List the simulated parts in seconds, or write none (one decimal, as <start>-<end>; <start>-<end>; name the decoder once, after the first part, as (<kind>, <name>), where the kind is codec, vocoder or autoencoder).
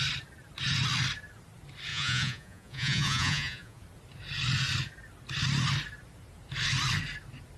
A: 1.9-3.8 (vocoder, Vocos)